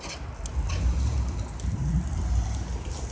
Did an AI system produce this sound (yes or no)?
no